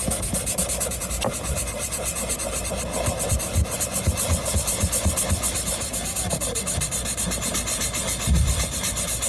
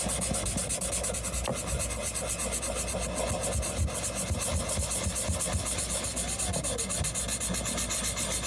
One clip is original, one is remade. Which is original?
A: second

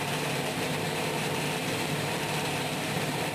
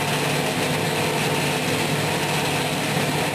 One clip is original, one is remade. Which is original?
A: second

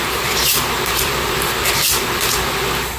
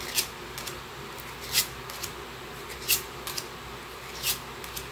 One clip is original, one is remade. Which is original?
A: second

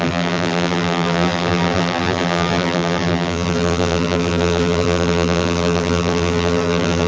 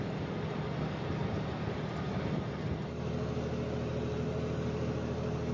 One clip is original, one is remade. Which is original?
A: second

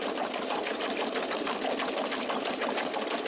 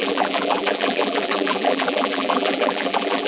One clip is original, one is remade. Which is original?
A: first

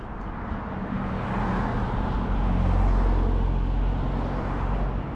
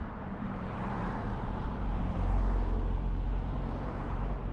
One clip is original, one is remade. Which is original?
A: first